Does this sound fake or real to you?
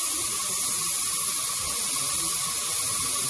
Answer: real